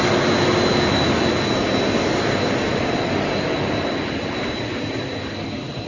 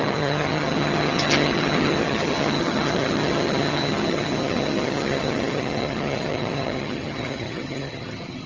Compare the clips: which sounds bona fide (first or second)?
first